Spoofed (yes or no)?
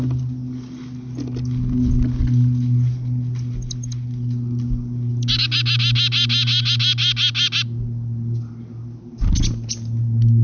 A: no